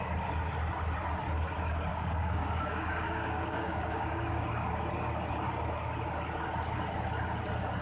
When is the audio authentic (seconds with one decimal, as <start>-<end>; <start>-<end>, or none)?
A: 0.0-1.9; 4.5-7.8